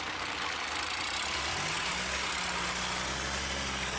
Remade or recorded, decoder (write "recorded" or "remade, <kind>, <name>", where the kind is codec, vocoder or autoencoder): recorded